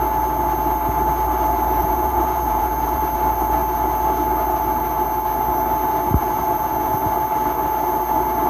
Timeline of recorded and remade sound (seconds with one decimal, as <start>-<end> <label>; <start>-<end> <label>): 0.0-1.8 recorded; 1.8-3.0 remade; 3.0-6.2 recorded; 6.2-7.0 remade; 7.0-8.5 recorded